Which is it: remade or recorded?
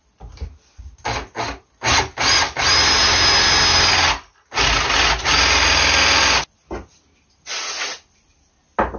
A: recorded